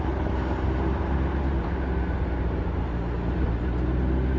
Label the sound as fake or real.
real